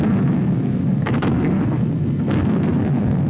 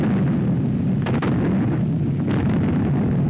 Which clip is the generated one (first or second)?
first